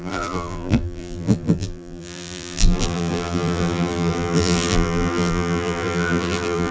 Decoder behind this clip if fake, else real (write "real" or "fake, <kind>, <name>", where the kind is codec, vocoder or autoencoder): fake, vocoder, BigVGAN v2